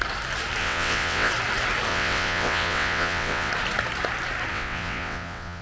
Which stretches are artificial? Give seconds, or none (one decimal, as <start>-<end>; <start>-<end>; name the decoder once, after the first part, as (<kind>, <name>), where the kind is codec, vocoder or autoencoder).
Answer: 0.6-1.3 (vocoder, WaveNeXt); 1.9-3.5; 4.5-5.6